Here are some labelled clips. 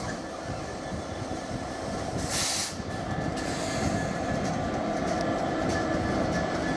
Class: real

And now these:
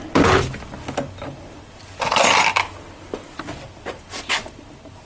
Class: real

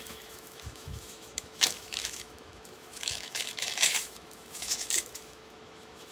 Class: fake